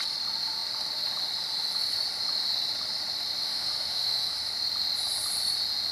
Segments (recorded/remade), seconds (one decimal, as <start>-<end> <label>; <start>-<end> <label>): 0.0-3.4 recorded; 3.4-4.3 remade; 4.3-5.9 recorded